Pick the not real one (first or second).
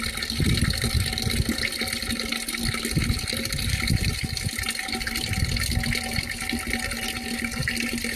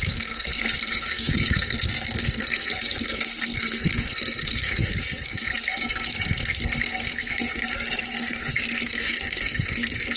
second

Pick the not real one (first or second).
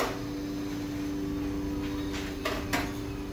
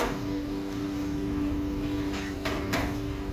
second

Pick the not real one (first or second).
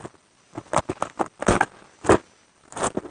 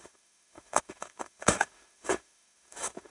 second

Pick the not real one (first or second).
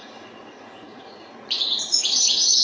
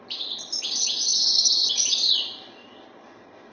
first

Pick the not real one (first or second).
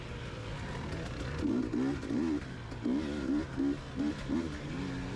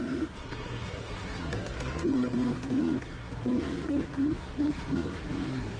second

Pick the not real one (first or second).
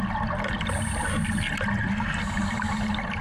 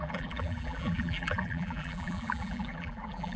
second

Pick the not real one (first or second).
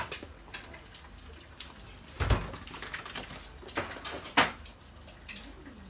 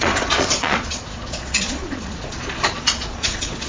second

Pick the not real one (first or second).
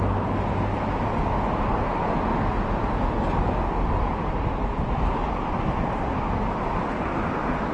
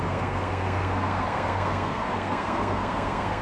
second